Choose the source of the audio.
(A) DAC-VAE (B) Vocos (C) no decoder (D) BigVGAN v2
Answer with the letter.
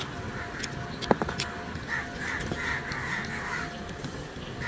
C